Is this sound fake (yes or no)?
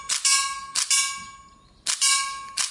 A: no